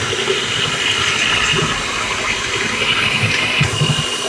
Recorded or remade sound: recorded